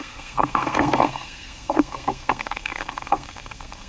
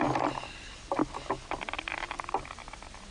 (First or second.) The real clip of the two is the second